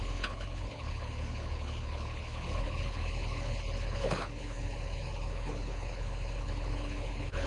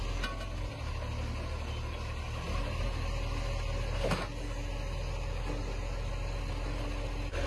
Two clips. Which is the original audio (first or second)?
second